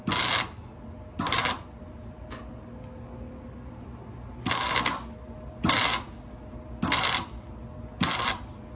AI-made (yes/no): no